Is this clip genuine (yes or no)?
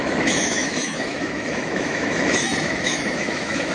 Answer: no